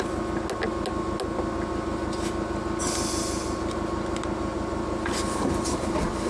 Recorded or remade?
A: recorded